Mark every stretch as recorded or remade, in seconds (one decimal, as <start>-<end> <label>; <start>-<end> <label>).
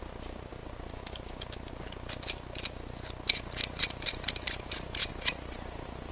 0.0-6.1 recorded